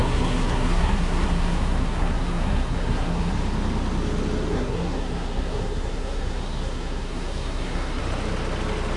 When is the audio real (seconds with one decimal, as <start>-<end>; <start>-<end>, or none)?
3.3-4.5; 8.0-9.0